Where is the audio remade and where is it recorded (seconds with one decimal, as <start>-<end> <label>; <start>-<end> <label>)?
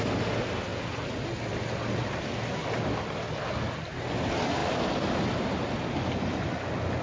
0.0-7.0 recorded